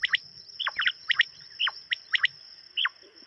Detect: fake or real real